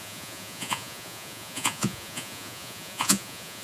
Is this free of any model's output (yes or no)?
no